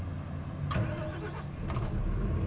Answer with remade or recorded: recorded